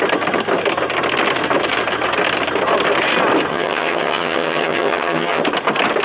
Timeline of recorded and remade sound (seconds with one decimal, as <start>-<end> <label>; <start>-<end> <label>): 0.0-3.5 recorded; 3.5-5.4 remade; 5.4-6.0 recorded